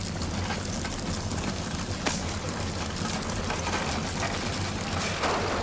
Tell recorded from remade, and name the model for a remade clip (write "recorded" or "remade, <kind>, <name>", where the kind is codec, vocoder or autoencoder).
recorded